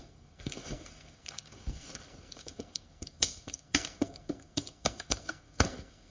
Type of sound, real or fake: fake